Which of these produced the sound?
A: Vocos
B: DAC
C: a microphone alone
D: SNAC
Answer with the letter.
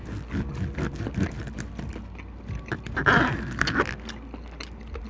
C